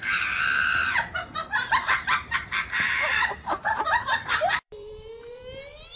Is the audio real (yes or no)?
no